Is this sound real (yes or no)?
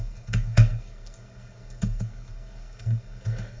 no